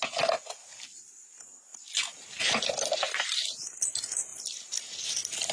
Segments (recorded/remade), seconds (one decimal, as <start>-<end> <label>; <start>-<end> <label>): 0.0-5.5 recorded